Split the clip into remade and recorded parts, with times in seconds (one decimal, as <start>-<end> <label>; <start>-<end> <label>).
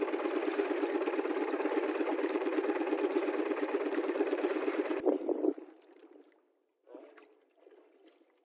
0.0-2.1 recorded; 2.1-6.2 remade; 6.2-8.4 recorded